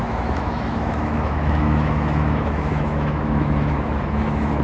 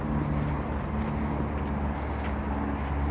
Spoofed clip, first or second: first